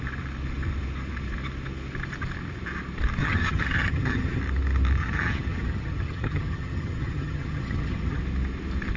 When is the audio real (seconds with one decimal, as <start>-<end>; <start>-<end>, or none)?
0.0-3.2; 4.4-5.0; 8.2-9.0

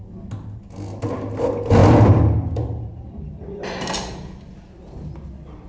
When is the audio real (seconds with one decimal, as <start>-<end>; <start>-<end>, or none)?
0.0-5.7

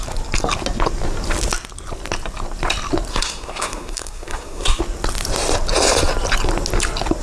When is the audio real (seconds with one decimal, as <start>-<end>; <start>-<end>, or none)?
0.0-3.1; 4.8-7.2

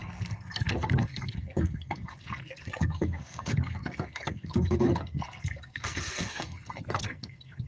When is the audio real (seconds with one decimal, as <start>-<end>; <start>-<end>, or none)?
none

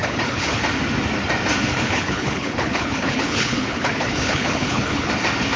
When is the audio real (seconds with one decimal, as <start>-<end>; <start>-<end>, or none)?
0.6-1.7; 5.1-5.6

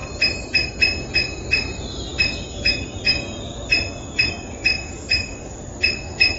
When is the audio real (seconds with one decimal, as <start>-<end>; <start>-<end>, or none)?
0.0-6.4

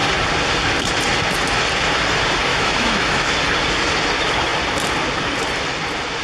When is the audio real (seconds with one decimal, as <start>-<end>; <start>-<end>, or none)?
0.0-2.5; 3.3-6.2

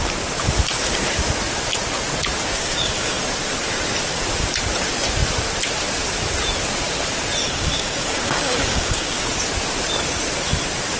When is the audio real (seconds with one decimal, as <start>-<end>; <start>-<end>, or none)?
0.0-2.6; 3.2-7.4; 9.2-11.0